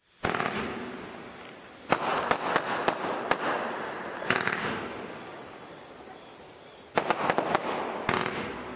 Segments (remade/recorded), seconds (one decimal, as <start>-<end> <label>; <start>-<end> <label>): 0.0-8.8 recorded